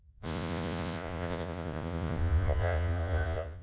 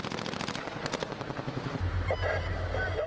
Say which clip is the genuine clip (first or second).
second